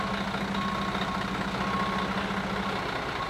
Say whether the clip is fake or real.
real